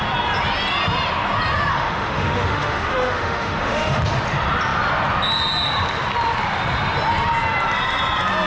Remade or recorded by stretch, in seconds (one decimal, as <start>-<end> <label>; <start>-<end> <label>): 0.0-1.7 recorded; 1.7-4.0 remade; 4.0-8.5 recorded